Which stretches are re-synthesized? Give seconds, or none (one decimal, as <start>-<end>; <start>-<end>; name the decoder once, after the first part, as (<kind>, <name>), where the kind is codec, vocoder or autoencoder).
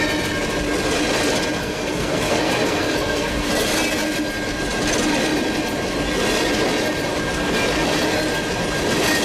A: 1.6-3.5 (codec, SNAC)